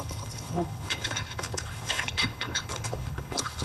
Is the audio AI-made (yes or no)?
yes